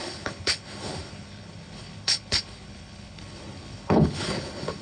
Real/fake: fake